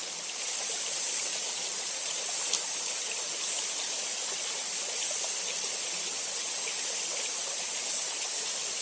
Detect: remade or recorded recorded